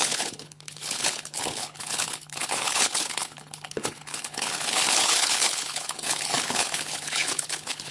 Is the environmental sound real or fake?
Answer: fake